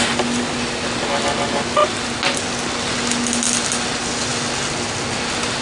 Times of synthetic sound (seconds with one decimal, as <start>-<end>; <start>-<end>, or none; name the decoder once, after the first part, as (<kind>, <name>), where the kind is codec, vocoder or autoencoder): none